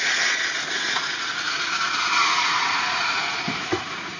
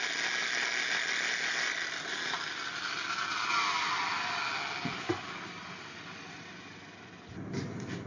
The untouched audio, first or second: second